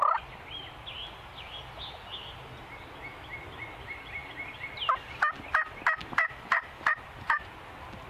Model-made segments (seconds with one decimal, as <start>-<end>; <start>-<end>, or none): none